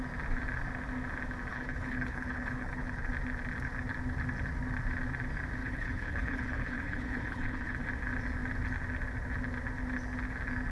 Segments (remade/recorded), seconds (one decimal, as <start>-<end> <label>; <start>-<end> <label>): 0.0-1.5 recorded; 1.5-3.1 remade; 3.1-5.6 recorded; 5.6-7.8 remade; 7.8-10.7 recorded

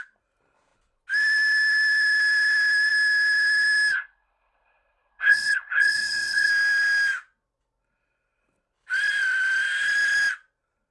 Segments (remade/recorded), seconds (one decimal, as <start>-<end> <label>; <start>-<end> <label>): 0.0-3.9 recorded; 3.9-6.5 remade; 6.5-10.9 recorded

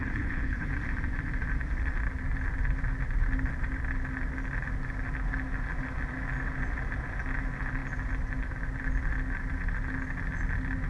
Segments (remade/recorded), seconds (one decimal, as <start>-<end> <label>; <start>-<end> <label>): 0.0-0.7 remade; 0.7-10.9 recorded

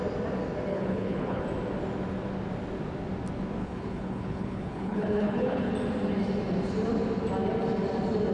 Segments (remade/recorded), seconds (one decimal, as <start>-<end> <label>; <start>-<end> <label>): 0.0-0.7 recorded; 0.7-1.4 remade; 1.4-3.6 recorded; 3.6-5.7 remade; 5.7-8.3 recorded

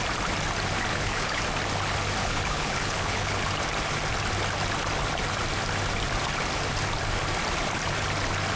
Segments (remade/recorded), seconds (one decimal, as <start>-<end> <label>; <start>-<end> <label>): 0.0-0.9 recorded; 0.9-1.4 remade; 1.4-2.2 recorded; 2.2-3.4 remade; 3.4-8.6 recorded

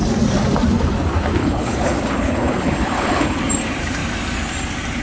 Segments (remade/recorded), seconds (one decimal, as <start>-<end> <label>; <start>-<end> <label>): 0.0-1.4 recorded; 1.4-3.4 remade; 3.4-5.0 recorded